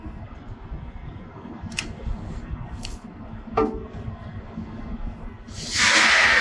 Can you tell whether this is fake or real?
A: fake